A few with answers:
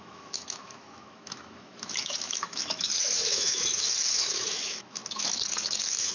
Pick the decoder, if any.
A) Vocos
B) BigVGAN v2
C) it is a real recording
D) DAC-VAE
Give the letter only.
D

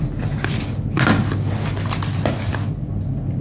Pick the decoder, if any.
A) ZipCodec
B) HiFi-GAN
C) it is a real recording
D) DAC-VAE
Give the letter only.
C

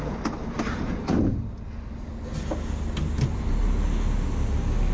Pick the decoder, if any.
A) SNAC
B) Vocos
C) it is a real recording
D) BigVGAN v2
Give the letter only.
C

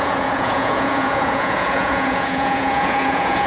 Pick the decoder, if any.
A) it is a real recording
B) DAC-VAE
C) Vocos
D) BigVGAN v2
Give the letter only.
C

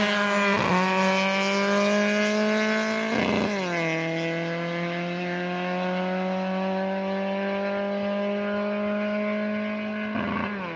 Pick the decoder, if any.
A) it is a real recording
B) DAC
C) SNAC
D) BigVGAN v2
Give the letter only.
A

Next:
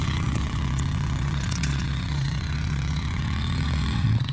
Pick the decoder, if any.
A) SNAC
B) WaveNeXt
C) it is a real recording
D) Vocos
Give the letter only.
B